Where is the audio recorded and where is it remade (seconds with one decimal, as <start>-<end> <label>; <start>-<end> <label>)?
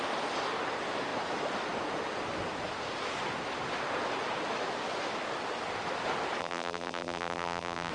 0.0-6.4 recorded; 6.4-7.9 remade